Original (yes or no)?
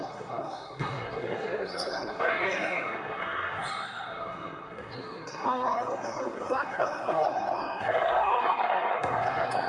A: no